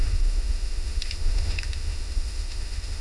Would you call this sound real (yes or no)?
no